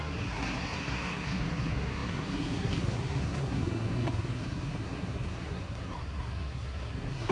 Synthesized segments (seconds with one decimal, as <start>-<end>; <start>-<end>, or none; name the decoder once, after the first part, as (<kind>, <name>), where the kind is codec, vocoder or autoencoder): 0.0-7.3 (codec, SNAC)